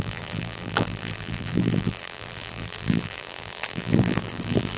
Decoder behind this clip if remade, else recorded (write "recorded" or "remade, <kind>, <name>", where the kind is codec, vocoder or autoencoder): remade, vocoder, BigVGAN v2